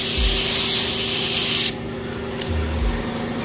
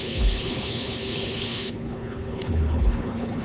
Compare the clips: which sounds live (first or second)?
first